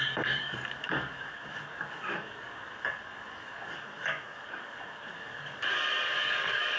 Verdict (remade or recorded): remade